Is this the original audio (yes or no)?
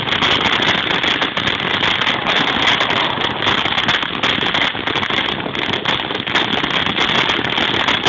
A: yes